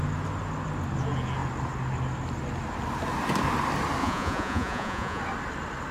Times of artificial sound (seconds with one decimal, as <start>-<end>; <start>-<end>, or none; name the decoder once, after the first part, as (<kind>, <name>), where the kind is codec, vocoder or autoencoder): 4.0-5.2 (vocoder, Vocos)